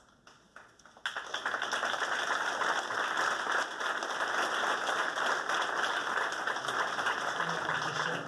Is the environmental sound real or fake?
real